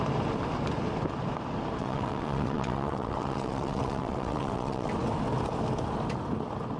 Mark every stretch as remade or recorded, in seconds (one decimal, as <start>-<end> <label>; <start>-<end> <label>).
0.0-1.8 recorded; 1.8-4.9 remade; 4.9-6.8 recorded